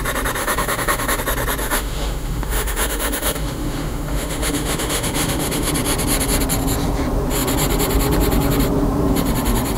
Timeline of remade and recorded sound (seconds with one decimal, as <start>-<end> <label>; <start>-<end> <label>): 0.0-0.4 recorded; 0.4-1.2 remade; 1.2-1.6 recorded; 1.6-5.7 remade; 5.7-9.8 recorded